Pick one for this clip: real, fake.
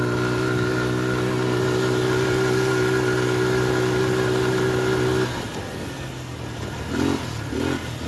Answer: real